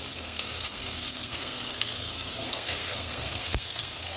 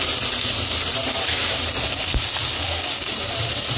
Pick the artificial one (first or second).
first